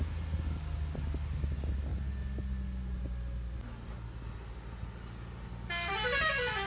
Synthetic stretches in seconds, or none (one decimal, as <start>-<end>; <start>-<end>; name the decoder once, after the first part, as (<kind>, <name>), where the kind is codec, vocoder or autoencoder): none